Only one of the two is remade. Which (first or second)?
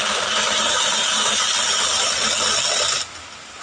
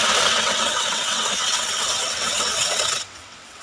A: second